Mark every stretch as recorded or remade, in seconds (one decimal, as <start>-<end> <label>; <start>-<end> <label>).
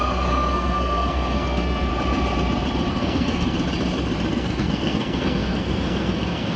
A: 0.0-1.9 remade; 1.9-2.9 recorded; 2.9-3.6 remade; 3.6-4.3 recorded; 4.3-6.6 remade